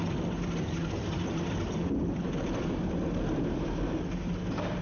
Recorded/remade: remade